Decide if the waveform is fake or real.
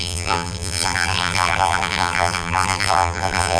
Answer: fake